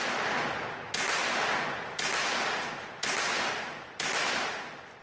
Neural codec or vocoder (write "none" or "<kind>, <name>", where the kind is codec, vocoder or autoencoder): none